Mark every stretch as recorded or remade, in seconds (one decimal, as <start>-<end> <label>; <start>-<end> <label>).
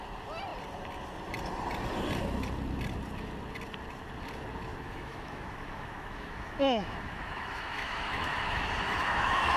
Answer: 0.0-4.7 recorded; 4.7-9.6 remade